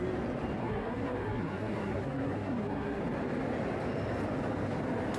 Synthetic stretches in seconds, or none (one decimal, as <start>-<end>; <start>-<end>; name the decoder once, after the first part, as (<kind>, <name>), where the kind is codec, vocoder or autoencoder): 0.6-3.0 (codec, SNAC)